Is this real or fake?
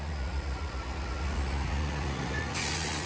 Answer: fake